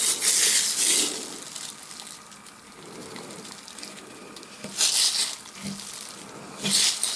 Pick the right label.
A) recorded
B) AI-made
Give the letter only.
A